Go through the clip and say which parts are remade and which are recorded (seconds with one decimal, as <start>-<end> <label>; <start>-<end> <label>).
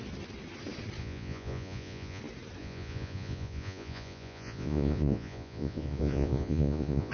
0.0-1.0 recorded; 1.0-2.2 remade; 2.2-2.6 recorded; 2.6-7.1 remade